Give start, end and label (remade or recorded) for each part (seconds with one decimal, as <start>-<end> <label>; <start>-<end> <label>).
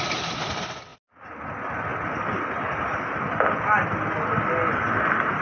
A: 0.0-5.4 recorded